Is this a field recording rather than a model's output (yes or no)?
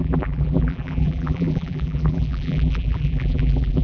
no